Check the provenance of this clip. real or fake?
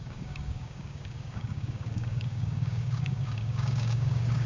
fake